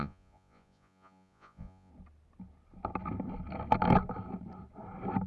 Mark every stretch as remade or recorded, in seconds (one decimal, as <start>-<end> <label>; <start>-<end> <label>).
0.0-1.9 remade; 1.9-5.3 recorded